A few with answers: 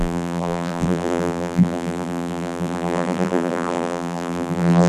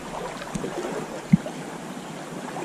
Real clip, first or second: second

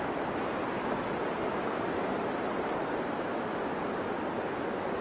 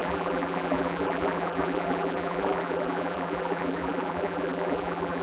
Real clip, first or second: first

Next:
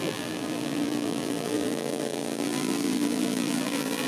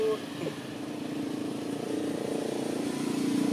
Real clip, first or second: second